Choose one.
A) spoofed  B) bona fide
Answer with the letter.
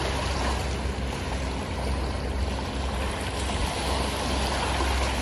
B